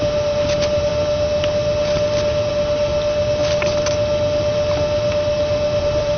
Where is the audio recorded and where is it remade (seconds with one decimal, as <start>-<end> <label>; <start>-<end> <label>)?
0.0-0.9 remade; 0.9-2.5 recorded; 2.5-2.9 remade; 2.9-5.8 recorded; 5.8-6.2 remade